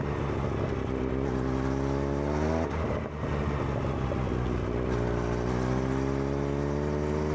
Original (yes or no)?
yes